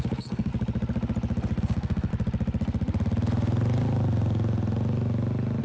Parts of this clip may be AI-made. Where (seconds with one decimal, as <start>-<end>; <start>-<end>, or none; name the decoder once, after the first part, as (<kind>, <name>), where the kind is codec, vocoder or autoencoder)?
0.0-0.5 (codec, SNAC); 1.6-2.1